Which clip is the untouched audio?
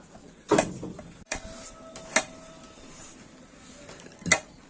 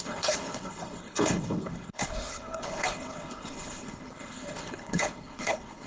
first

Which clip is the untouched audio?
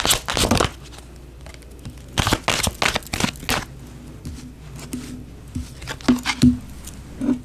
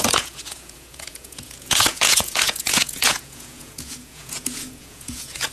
first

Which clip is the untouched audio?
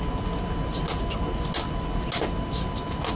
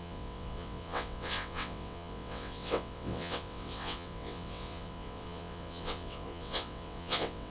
first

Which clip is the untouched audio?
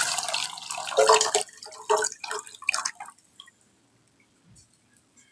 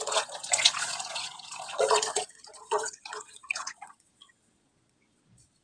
first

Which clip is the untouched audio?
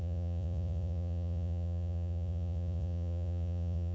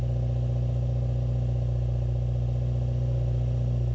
second